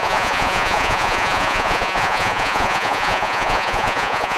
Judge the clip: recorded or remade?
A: remade